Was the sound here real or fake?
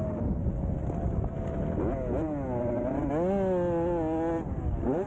real